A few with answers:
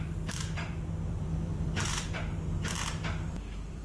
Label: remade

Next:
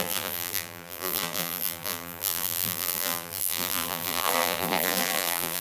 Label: remade